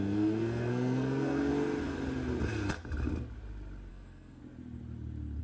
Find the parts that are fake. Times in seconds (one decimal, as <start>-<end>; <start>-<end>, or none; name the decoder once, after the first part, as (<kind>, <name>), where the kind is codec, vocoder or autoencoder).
0.0-1.5 (codec, SNAC); 3.9-4.4